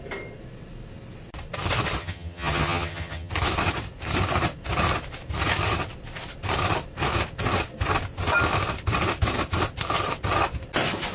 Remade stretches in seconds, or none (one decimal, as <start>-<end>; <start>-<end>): 2.0-3.3